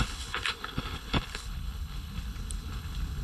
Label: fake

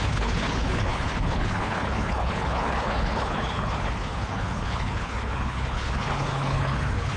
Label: fake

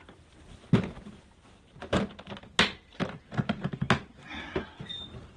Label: real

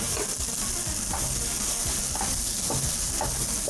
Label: real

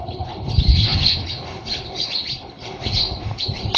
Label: fake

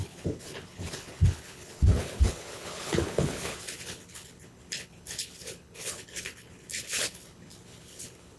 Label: fake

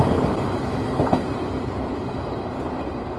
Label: real